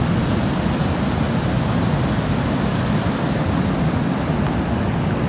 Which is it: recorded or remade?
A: recorded